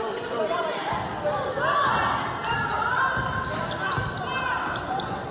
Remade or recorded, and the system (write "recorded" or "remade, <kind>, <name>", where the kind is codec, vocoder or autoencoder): recorded